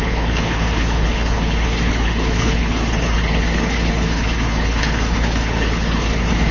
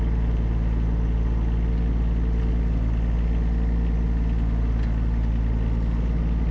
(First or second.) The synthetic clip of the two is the first